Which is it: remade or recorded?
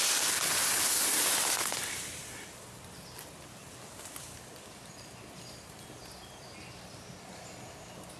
recorded